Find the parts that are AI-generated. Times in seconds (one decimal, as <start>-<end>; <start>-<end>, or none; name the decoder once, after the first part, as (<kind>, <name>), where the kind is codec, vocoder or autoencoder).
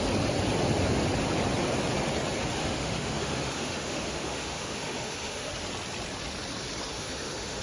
2.6-5.5 (autoencoder, DAC-VAE); 6.9-7.6